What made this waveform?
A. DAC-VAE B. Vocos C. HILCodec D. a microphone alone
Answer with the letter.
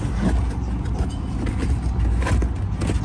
D